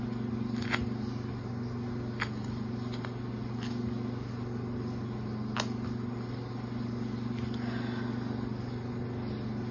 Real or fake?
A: real